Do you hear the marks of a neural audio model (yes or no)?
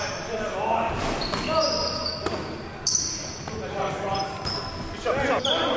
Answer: no